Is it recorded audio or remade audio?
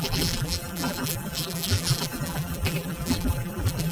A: remade